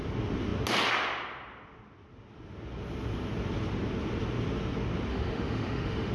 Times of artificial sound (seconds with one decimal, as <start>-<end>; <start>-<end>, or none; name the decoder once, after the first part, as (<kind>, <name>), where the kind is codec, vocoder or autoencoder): 5.1-6.1 (autoencoder, DAC-VAE)